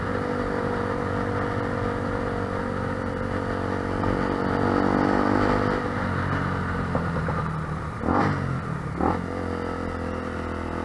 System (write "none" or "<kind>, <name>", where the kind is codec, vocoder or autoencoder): none